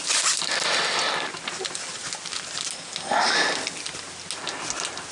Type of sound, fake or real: real